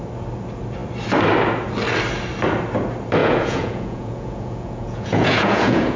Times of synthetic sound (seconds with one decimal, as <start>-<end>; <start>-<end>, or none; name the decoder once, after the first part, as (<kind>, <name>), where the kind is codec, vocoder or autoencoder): 3.2-6.0 (vocoder, Vocos)